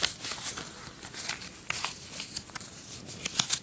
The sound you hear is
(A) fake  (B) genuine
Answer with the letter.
B